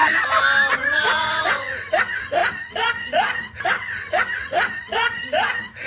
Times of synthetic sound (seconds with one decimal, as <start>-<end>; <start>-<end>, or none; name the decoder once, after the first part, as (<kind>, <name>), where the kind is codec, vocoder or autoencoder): 0.7-5.9 (vocoder, Vocos)